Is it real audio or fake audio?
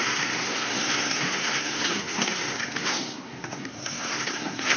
fake